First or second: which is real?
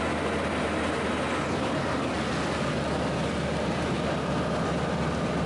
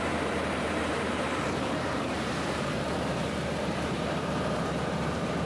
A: first